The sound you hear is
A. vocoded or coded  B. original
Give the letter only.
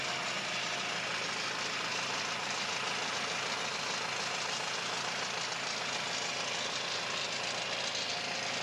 B